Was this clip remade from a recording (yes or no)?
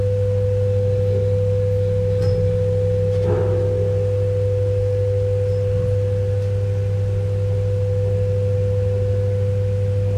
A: no